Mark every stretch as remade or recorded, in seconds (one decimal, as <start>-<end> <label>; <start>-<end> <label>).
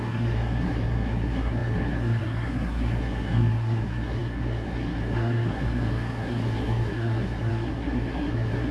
0.0-8.7 remade